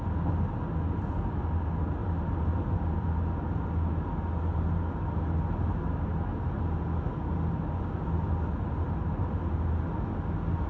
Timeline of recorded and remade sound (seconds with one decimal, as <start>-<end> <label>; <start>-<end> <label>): 0.0-10.7 recorded